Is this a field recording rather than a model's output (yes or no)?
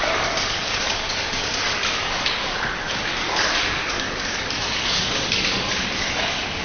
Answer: no